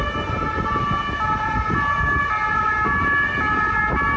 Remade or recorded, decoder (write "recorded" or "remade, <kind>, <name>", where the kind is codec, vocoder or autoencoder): recorded